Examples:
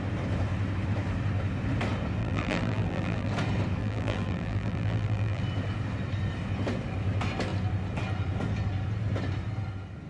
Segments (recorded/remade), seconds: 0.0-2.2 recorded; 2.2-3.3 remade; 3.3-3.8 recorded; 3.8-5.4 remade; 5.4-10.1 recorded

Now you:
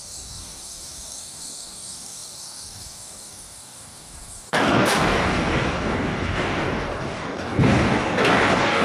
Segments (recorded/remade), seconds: 0.0-8.8 remade

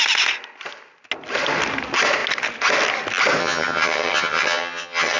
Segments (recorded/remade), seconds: 0.0-3.4 recorded; 3.4-5.2 remade

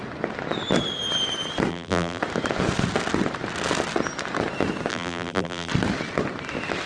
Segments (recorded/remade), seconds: 0.0-1.7 recorded; 1.7-2.2 remade; 2.2-4.9 recorded; 4.9-5.7 remade; 5.7-6.9 recorded

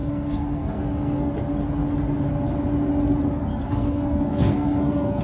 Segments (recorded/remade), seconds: 0.0-1.3 remade; 1.3-3.5 recorded; 3.5-5.2 remade